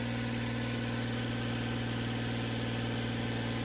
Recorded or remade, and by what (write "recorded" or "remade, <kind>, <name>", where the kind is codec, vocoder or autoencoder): recorded